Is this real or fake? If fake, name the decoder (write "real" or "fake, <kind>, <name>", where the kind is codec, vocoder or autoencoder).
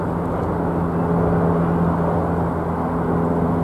real